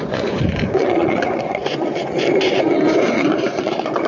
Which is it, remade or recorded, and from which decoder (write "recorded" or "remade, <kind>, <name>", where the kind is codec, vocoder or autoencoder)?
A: remade, vocoder, Vocos